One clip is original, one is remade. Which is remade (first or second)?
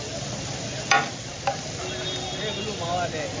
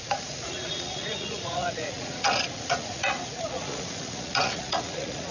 second